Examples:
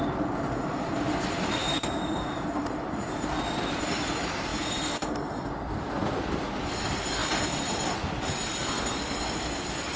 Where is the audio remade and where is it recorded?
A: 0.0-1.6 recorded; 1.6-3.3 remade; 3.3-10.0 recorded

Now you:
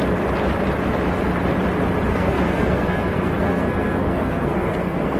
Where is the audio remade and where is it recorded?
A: 0.0-2.1 recorded; 2.1-5.2 remade

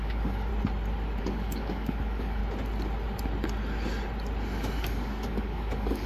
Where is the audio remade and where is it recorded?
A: 0.0-0.5 remade; 0.5-1.2 recorded; 1.2-2.4 remade; 2.4-4.8 recorded; 4.8-6.1 remade

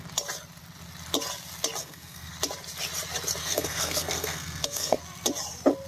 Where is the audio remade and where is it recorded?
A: 0.0-1.8 recorded; 1.8-2.3 remade; 2.3-3.4 recorded; 3.4-5.0 remade; 5.0-5.9 recorded

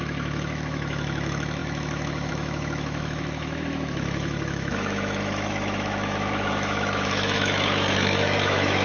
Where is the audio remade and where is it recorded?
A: 0.0-8.8 remade

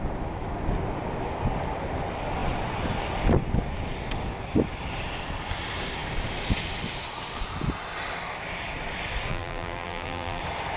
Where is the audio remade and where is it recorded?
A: 0.0-9.3 recorded; 9.3-10.4 remade; 10.4-10.8 recorded

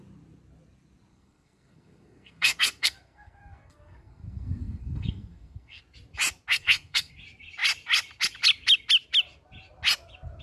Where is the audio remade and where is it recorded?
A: 0.0-1.1 recorded; 1.1-5.8 remade; 5.8-6.5 recorded; 6.5-7.1 remade; 7.1-10.4 recorded

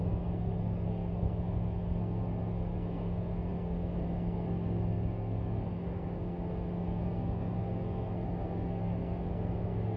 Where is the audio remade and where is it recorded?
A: 0.0-10.0 remade